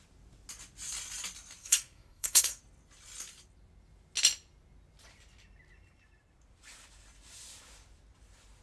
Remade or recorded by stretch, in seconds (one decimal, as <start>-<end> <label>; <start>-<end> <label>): 0.0-1.6 recorded; 1.6-2.6 remade; 2.6-8.6 recorded